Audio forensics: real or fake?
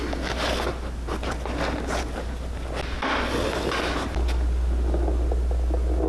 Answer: real